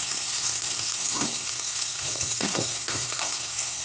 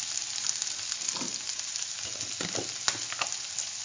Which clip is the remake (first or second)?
first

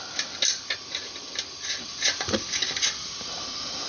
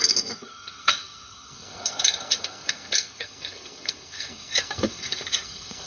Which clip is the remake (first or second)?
second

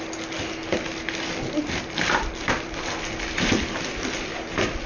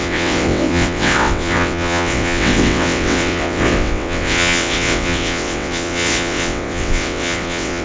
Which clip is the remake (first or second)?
second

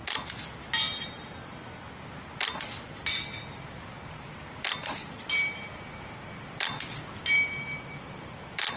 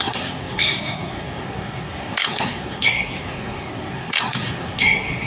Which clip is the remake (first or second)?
second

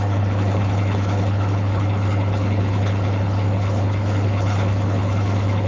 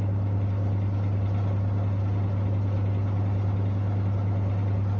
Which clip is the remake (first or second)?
first